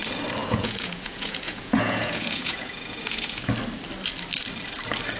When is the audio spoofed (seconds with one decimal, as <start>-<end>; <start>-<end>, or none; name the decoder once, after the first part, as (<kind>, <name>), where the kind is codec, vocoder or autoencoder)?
0.4-3.5 (vocoder, Vocos)